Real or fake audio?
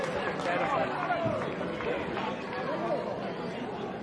real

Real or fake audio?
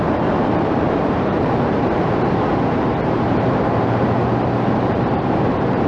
fake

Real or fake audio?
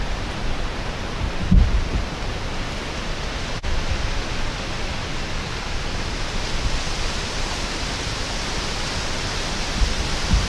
real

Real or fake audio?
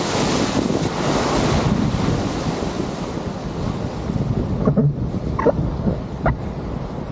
real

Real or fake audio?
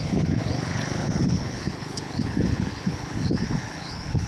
fake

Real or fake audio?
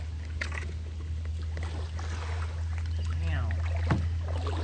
real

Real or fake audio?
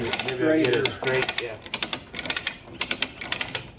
fake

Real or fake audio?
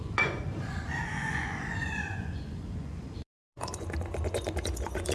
fake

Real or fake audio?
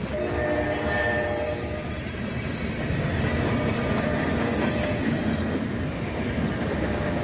real